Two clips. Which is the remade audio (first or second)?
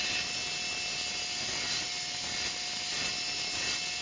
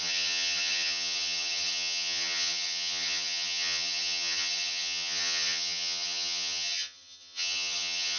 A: second